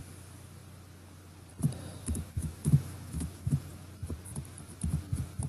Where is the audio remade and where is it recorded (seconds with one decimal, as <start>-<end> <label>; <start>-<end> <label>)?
0.0-2.0 recorded; 2.0-3.7 remade; 3.7-5.5 recorded